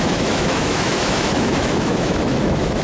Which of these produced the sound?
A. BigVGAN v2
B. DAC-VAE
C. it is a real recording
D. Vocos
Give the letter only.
B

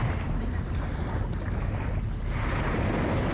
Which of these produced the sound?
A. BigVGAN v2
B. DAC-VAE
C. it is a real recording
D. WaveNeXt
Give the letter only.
C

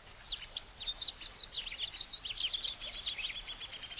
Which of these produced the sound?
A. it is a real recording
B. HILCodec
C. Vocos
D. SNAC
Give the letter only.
A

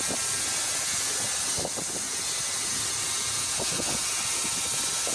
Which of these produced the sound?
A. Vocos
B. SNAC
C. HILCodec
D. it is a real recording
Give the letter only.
D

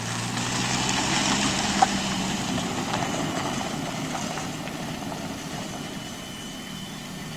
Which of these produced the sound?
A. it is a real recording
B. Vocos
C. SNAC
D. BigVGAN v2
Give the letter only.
A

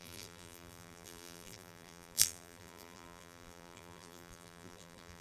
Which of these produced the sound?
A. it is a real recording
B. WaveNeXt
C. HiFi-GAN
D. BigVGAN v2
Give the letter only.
D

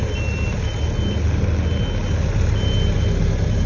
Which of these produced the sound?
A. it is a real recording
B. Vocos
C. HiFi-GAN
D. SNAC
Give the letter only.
A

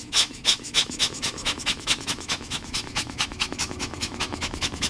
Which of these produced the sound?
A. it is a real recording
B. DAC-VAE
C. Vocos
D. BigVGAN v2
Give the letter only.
B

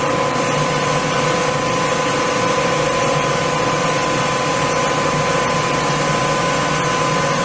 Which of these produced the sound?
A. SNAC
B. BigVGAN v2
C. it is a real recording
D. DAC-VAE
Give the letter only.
C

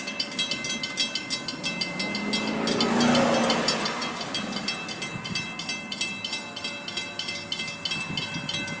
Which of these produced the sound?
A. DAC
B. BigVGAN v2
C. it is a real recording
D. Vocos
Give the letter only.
C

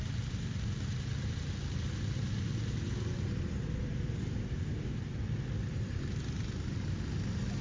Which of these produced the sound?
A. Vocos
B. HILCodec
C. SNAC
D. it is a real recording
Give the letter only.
D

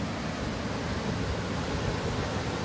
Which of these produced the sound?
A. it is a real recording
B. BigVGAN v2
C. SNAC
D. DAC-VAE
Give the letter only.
A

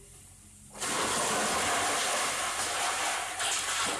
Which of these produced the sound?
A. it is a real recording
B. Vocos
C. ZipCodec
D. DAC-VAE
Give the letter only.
A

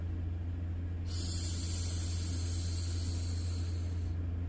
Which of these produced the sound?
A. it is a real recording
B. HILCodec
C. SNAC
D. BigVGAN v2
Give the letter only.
A